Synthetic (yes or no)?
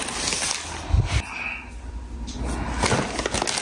no